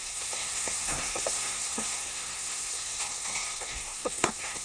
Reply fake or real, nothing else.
fake